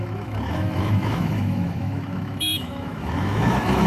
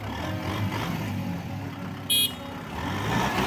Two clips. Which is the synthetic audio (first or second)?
first